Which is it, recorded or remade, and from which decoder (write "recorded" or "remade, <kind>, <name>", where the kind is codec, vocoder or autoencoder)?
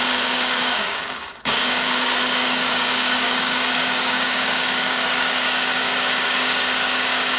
remade, codec, DAC